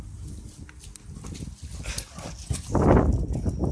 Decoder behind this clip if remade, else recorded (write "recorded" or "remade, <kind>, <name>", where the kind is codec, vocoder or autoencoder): recorded